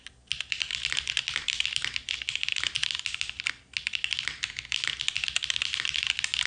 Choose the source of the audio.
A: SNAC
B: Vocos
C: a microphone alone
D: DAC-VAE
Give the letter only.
C